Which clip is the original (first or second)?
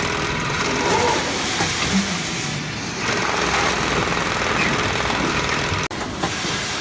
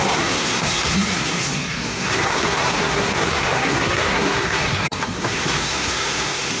first